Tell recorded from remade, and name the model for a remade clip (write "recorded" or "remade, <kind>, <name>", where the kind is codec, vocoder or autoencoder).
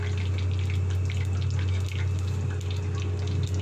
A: recorded